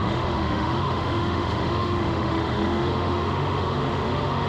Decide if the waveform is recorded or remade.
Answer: remade